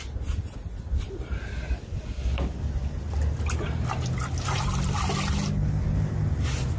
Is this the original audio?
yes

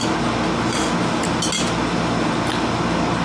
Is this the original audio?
yes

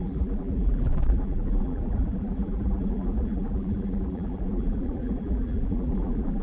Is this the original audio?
no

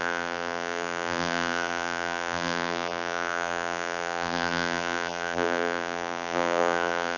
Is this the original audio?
no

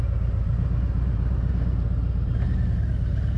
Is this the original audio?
yes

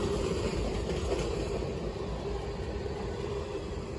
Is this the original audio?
no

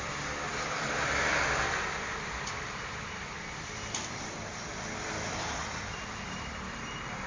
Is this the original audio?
no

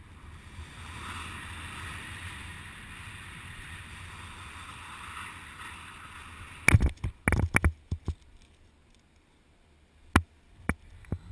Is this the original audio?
yes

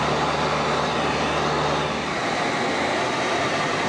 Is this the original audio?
yes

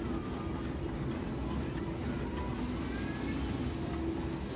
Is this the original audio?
yes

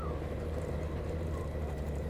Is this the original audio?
no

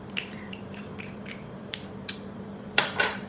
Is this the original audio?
no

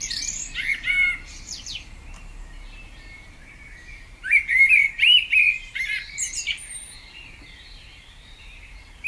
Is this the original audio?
no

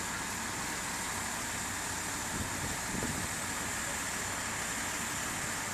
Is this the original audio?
yes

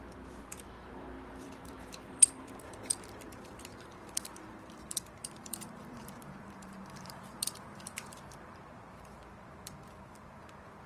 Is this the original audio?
no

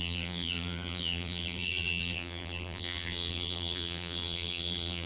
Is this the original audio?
no